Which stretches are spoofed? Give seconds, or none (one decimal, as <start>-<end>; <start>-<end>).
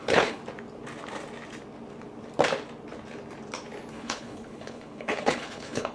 0.0-0.4; 3.9-5.9